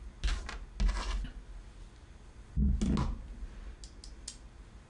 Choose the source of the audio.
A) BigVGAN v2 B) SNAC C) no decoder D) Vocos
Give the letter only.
C